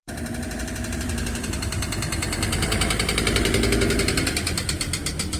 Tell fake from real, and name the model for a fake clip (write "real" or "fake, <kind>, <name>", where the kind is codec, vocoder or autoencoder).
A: fake, vocoder, BigVGAN v2